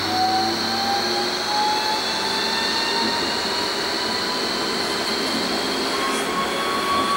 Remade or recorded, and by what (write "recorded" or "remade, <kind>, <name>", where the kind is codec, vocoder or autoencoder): recorded